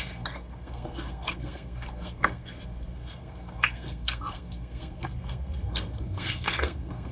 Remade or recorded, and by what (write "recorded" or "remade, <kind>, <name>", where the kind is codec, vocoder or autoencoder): remade, codec, SNAC